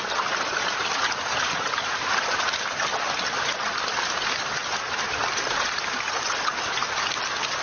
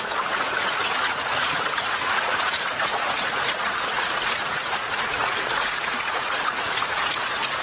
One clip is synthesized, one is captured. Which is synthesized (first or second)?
second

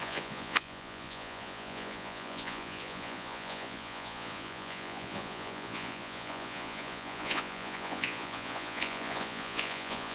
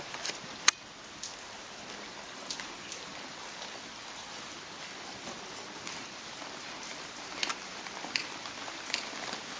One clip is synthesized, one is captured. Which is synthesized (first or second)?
first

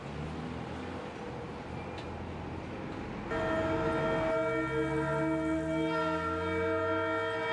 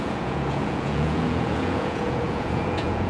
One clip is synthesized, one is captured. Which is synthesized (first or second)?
second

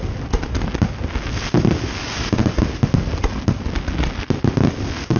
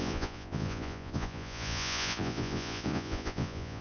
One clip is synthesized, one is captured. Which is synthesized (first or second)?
second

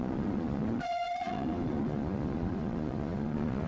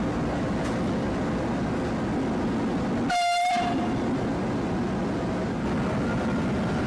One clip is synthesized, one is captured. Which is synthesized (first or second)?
first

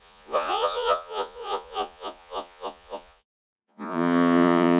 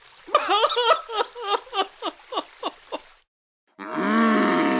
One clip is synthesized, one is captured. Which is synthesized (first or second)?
first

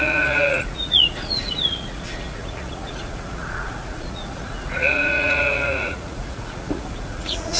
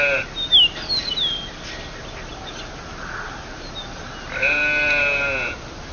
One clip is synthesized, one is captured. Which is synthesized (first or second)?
first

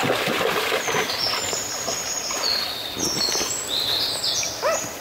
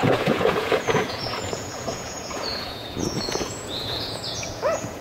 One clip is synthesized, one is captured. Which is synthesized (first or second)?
second